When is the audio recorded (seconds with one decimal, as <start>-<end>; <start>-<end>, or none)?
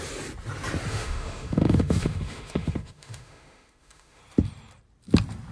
0.0-0.9; 4.2-5.5